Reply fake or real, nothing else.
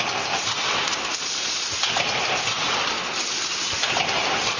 real